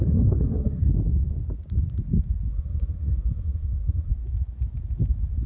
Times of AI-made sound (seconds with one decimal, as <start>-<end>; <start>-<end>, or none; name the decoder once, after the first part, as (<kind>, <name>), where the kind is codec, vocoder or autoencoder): 0.0-0.8 (codec, SNAC); 2.5-4.1